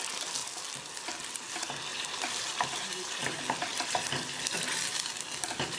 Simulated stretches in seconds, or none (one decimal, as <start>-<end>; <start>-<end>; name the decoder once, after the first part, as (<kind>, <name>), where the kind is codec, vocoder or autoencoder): 1.9-3.4 (vocoder, BigVGAN v2)